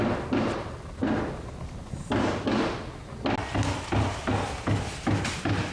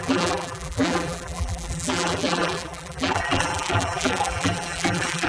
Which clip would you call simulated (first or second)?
second